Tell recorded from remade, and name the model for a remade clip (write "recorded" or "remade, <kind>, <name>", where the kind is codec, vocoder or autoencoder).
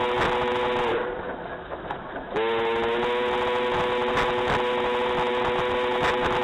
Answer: recorded